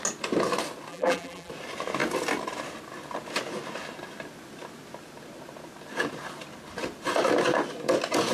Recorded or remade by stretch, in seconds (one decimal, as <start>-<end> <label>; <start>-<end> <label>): 0.0-0.9 recorded; 0.9-1.5 remade; 1.5-8.3 recorded